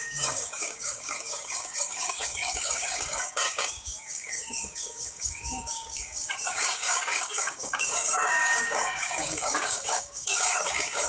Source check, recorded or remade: remade